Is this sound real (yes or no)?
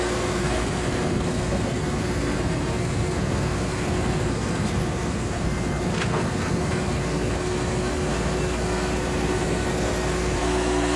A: no